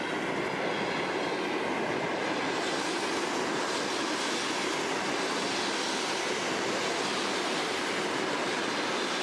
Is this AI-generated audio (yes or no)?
no